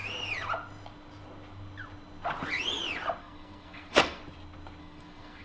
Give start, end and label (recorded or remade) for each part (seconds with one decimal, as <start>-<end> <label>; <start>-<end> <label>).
0.0-3.2 recorded; 3.2-4.2 remade; 4.2-4.8 recorded; 4.8-5.4 remade